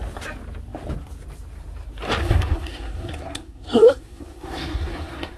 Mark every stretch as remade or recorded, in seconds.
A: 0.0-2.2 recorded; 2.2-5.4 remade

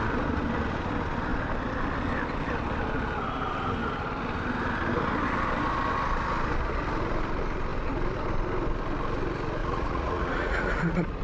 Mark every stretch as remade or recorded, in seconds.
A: 0.0-9.6 recorded; 9.6-11.2 remade

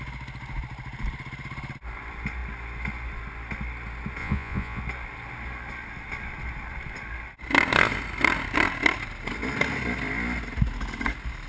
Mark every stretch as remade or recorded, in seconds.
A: 0.0-4.2 recorded; 4.2-4.8 remade; 4.8-11.5 recorded

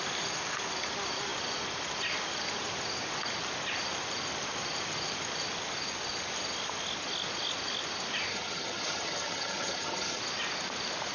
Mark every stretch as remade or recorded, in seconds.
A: 0.0-8.3 recorded; 8.3-10.2 remade; 10.2-11.1 recorded